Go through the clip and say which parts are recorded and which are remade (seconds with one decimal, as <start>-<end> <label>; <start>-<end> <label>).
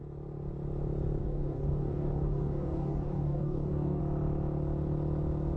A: 0.0-1.2 recorded; 1.2-4.0 remade; 4.0-5.6 recorded